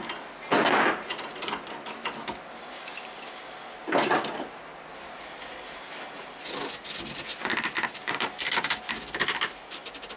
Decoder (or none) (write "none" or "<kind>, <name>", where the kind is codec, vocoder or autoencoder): none